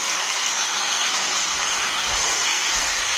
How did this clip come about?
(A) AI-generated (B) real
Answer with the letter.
A